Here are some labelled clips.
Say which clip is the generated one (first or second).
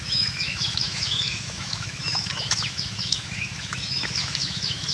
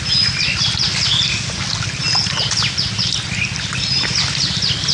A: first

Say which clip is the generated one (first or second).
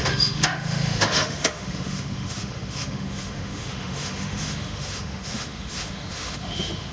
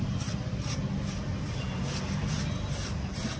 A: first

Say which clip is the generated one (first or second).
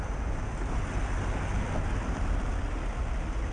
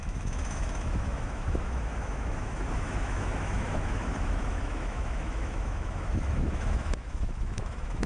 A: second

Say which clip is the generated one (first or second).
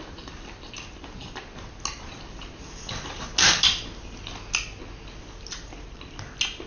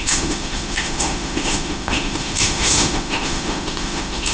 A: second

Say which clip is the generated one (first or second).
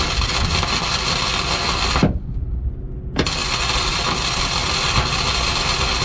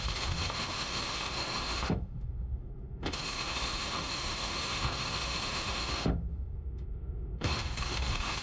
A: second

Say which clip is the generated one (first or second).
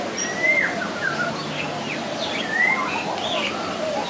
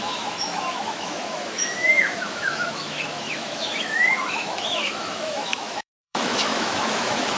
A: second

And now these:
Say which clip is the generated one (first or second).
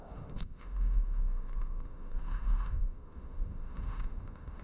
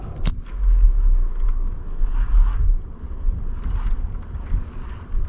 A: first